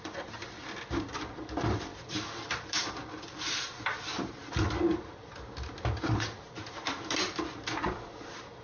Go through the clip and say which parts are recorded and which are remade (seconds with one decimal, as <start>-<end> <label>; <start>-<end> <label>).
0.0-1.9 recorded; 1.9-4.5 remade; 4.5-8.6 recorded